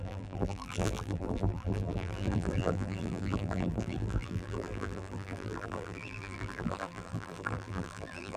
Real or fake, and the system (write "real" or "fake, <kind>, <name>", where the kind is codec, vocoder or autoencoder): fake, vocoder, BigVGAN v2